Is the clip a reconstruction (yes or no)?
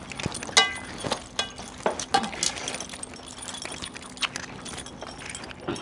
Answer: no